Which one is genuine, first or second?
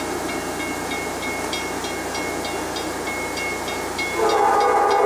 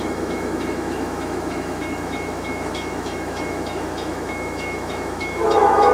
first